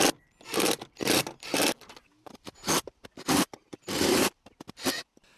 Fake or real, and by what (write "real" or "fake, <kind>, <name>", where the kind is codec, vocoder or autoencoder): real